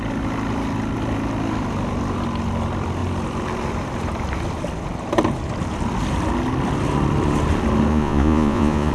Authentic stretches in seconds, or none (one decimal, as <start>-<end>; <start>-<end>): 0.0-7.9